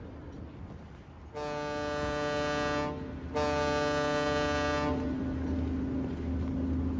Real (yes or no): yes